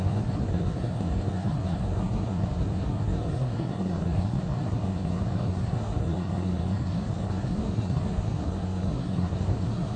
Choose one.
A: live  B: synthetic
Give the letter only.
B